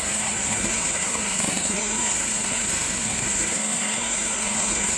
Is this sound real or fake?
fake